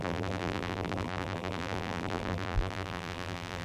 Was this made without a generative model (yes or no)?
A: no